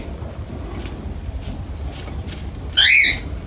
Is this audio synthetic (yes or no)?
no